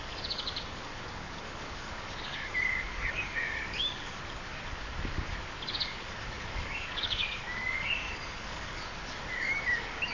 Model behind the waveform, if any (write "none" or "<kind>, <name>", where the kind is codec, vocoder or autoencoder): codec, DAC